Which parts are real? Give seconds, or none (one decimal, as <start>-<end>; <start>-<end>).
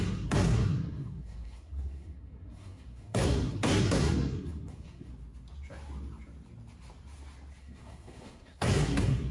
5.1-7.6